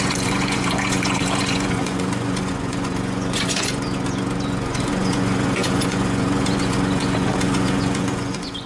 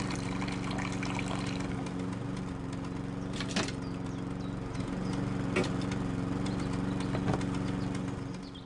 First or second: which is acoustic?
second